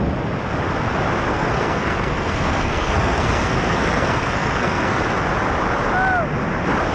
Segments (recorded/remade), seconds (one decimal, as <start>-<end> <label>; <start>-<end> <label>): 0.0-1.3 recorded; 1.3-5.0 remade; 5.0-6.9 recorded